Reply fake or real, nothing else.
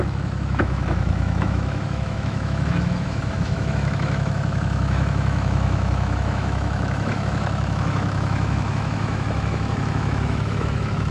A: fake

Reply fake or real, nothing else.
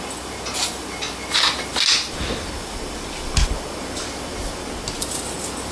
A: real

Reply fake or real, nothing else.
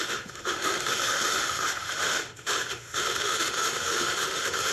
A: fake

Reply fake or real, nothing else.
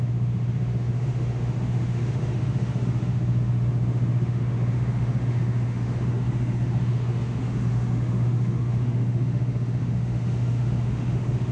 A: fake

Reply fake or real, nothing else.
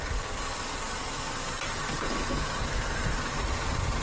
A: real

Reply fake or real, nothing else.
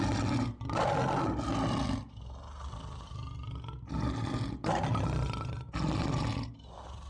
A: real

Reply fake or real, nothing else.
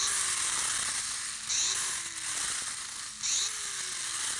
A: real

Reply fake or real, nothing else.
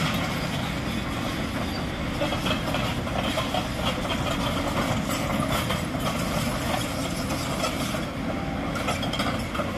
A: real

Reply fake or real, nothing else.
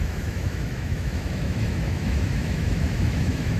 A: fake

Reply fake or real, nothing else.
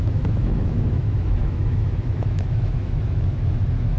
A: fake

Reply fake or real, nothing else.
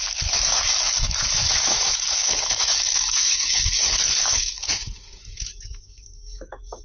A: fake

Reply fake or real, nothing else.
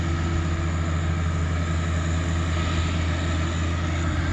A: real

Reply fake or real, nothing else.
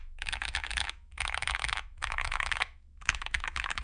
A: fake